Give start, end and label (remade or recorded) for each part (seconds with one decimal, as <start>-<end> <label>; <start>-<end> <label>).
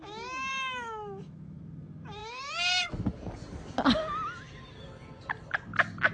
0.0-0.5 recorded; 0.5-1.6 remade; 1.6-6.1 recorded